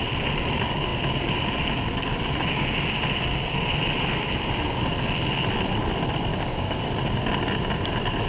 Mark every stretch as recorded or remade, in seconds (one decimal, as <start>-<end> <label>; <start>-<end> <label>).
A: 0.0-6.3 recorded; 6.3-6.9 remade; 6.9-8.3 recorded